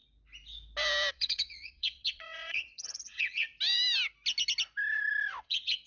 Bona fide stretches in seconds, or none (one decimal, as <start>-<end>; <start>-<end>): 0.0-1.1; 3.5-5.4